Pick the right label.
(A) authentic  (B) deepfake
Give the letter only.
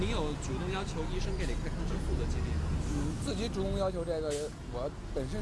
A